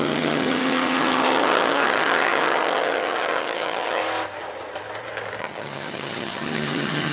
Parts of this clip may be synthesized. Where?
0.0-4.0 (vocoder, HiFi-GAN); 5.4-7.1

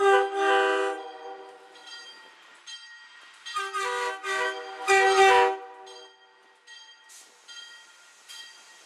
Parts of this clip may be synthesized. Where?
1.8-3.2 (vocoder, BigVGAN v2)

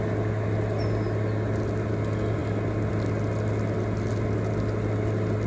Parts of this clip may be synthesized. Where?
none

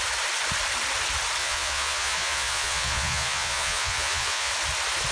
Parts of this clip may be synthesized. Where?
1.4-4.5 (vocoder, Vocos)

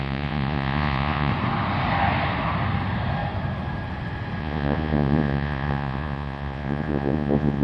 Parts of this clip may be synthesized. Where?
0.0-1.3 (vocoder, Vocos); 4.4-7.6

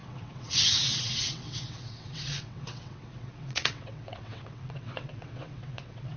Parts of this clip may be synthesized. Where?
0.0-6.2 (vocoder, WaveNeXt)

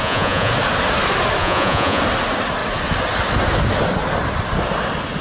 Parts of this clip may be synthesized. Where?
0.0-0.5 (vocoder, Vocos); 1.4-2.0

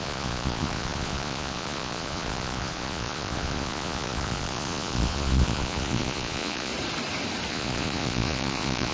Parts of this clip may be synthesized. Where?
0.0-6.7 (vocoder, Vocos); 7.5-8.9